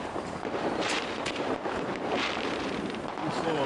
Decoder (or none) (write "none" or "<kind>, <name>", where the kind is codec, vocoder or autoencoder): vocoder, BigVGAN v2